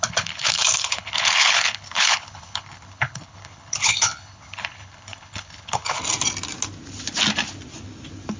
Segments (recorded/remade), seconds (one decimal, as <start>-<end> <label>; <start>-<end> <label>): 0.0-6.0 remade; 6.0-8.4 recorded